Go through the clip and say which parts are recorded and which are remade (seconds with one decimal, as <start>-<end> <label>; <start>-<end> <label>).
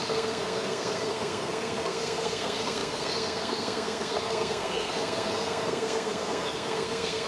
0.0-7.3 remade